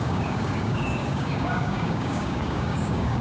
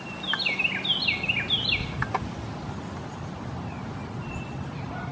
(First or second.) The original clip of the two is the second